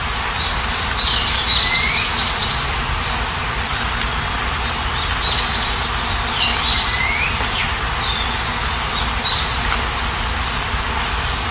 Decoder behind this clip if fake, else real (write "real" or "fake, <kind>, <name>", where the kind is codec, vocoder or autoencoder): real